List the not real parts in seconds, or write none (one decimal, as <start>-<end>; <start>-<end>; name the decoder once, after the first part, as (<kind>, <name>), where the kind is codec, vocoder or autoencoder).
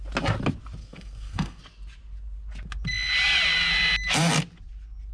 0.8-1.6 (codec, SNAC)